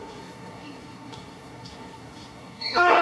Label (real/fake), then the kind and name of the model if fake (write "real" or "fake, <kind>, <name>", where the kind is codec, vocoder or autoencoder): fake, codec, SNAC